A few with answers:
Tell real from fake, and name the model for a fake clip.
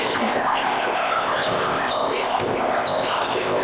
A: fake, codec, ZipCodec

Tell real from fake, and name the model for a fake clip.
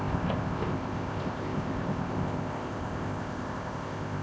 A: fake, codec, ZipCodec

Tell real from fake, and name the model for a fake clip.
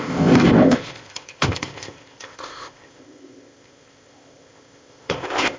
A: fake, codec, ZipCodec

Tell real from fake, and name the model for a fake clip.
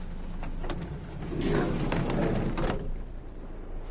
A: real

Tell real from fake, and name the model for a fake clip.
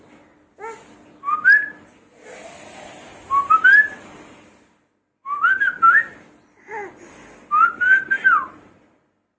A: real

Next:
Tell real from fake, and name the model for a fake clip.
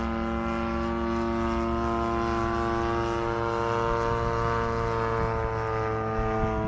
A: real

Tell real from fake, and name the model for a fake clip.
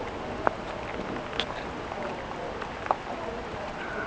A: real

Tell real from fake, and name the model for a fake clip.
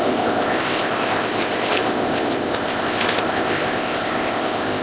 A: fake, codec, ZipCodec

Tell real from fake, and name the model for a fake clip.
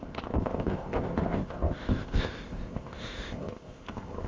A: fake, codec, ZipCodec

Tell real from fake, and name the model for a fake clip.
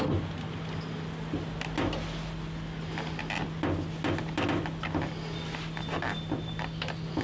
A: real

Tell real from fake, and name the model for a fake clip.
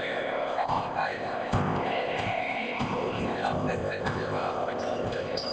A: fake, codec, ZipCodec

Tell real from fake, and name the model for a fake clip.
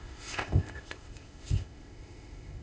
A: fake, codec, ZipCodec